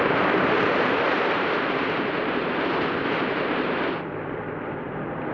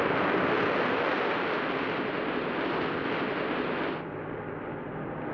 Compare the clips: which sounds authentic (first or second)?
second